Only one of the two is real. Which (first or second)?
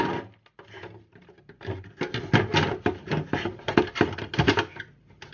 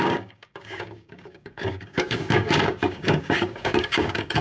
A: first